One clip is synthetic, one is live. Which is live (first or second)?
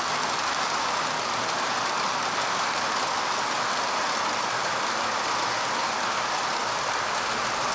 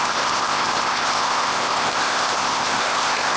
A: first